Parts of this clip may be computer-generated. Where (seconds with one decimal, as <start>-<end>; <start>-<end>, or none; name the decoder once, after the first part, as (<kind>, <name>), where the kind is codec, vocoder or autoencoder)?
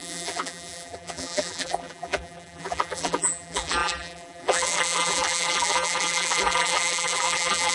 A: 0.0-7.7 (vocoder, BigVGAN v2)